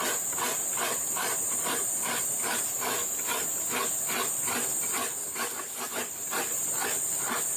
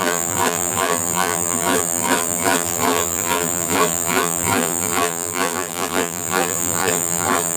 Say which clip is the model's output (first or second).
second